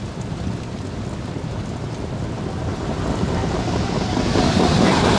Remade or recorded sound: recorded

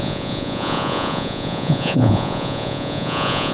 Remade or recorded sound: remade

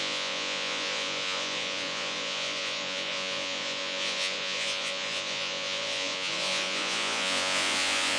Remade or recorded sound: remade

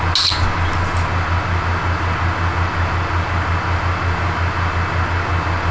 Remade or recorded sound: recorded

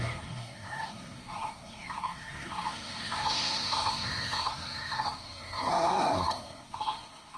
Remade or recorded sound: remade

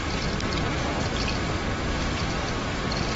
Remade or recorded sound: remade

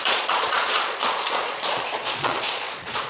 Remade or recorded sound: remade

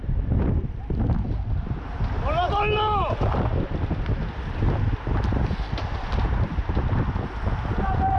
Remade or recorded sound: recorded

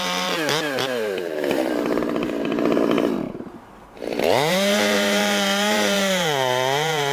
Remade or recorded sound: remade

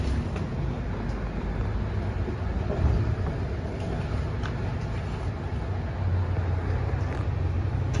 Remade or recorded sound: recorded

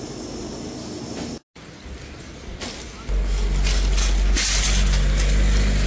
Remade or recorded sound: recorded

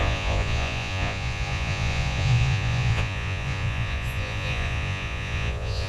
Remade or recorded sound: remade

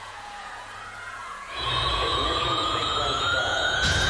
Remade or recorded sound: remade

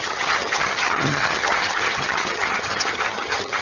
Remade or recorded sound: remade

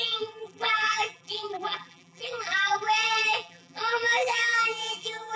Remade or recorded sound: remade